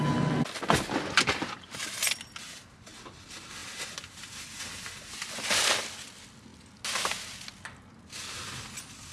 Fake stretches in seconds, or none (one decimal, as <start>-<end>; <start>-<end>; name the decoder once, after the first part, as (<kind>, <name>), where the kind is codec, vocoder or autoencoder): none